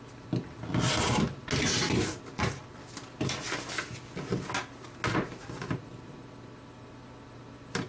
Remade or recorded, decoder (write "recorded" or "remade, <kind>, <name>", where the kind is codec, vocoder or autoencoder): recorded